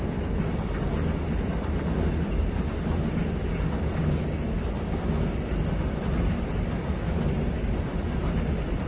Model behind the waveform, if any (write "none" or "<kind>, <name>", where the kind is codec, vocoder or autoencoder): none